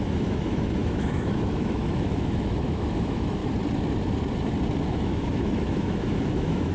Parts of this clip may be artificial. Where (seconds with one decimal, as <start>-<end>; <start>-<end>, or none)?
0.0-3.4; 4.9-6.7